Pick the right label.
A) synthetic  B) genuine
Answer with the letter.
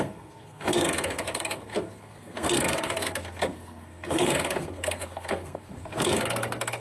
A